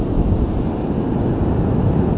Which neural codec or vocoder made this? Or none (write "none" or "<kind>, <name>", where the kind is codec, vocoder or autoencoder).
none